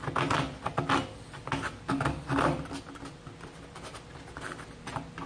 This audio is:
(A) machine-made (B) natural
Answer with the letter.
B